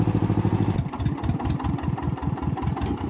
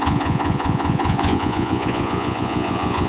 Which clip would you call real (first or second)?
first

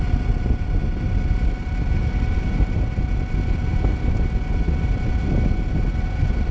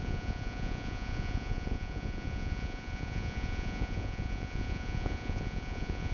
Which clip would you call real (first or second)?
first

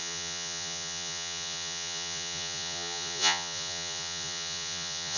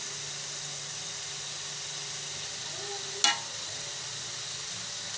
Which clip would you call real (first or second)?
second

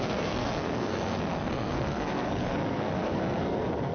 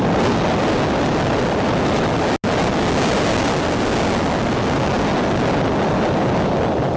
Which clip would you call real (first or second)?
second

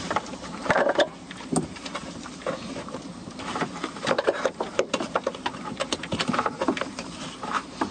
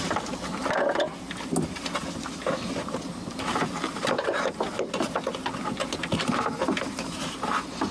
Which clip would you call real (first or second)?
second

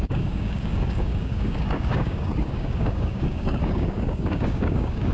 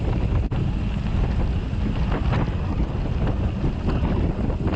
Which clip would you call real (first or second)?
second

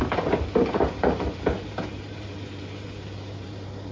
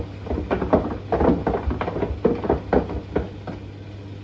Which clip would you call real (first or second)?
second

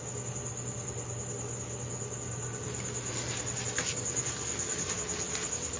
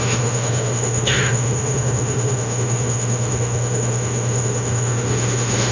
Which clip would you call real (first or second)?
first